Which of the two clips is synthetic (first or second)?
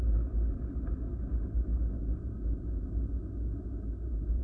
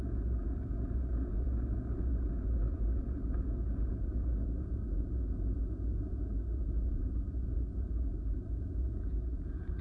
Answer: second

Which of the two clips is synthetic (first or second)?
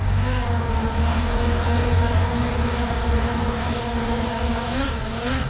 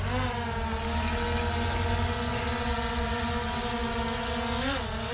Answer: first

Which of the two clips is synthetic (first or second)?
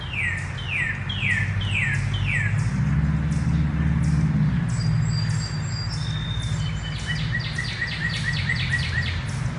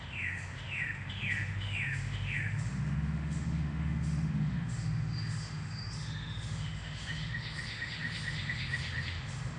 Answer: second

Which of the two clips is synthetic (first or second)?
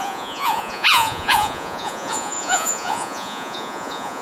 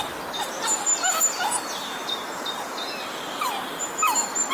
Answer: first